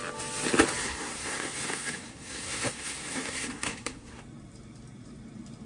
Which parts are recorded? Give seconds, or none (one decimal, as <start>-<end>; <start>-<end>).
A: 0.0-0.8; 4.2-5.7